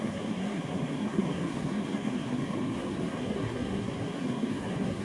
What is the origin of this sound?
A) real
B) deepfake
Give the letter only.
B